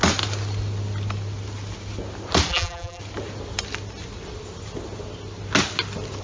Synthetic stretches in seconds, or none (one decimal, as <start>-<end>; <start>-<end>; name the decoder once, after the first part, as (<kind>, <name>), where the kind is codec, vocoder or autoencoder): 2.5-3.0 (vocoder, BigVGAN v2)

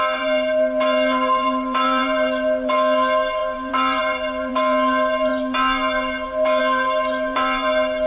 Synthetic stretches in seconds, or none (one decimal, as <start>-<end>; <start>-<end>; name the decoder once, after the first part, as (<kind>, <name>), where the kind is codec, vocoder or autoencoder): 0.0-8.1 (vocoder, BigVGAN v2)

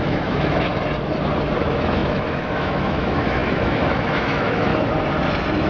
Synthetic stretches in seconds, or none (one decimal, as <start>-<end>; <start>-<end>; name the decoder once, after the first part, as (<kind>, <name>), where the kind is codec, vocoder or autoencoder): 0.0-0.7 (autoencoder, DAC-VAE); 1.6-4.7

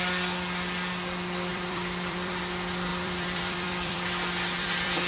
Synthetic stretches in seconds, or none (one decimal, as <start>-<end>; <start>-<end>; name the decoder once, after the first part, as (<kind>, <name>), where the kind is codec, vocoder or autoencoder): 1.5-2.4 (vocoder, BigVGAN v2); 2.9-5.1

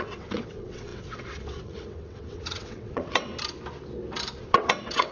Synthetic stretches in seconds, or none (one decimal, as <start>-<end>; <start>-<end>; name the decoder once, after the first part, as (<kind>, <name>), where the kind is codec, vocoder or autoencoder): 0.0-3.3 (vocoder, WaveNeXt); 4.4-5.1

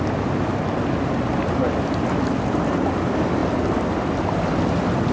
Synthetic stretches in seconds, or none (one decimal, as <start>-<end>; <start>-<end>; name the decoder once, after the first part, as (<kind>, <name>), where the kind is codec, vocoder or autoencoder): none

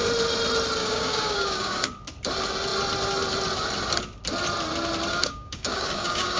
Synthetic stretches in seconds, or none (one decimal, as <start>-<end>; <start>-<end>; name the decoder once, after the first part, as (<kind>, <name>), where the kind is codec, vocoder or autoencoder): 0.8-1.8 (codec, DAC); 5.1-6.4